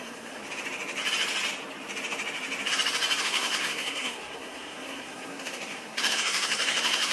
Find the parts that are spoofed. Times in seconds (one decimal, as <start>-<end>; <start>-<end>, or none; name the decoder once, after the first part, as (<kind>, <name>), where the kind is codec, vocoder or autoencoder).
0.0-0.4 (codec, SNAC); 3.2-7.1